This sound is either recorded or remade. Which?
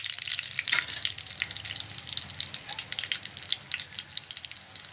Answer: recorded